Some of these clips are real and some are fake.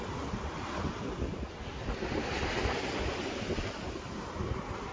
real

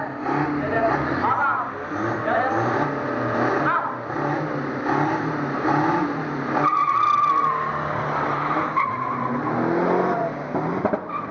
real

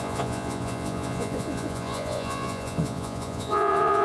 fake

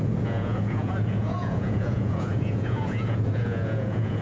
fake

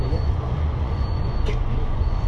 fake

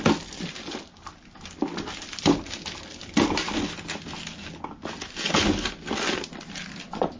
real